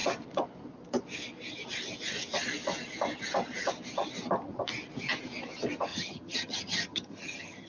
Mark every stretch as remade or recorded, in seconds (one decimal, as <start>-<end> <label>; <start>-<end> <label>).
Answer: 0.0-5.9 recorded; 5.9-7.7 remade